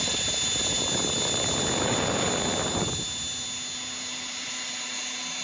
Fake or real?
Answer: real